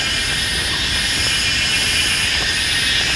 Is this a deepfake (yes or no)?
no